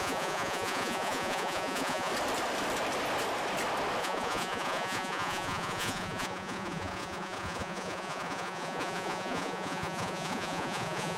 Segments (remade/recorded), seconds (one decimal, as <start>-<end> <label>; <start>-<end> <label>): 0.0-2.1 remade; 2.1-4.0 recorded; 4.0-11.2 remade